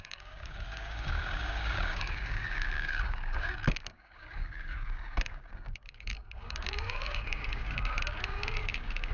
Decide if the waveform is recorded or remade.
remade